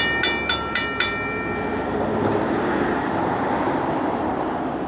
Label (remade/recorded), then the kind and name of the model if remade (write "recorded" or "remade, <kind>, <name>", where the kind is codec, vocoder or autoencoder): recorded